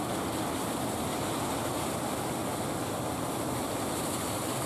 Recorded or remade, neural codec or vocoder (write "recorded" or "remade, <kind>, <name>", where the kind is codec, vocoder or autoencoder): recorded